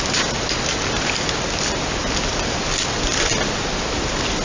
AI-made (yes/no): no